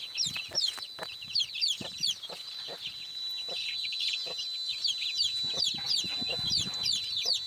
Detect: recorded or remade recorded